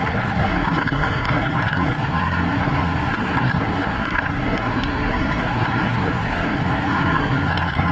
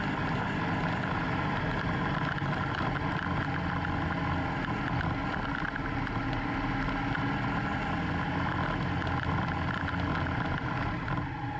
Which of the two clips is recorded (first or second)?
second